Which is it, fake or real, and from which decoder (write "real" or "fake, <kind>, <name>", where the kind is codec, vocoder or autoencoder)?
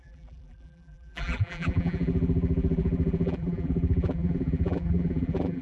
fake, vocoder, BigVGAN v2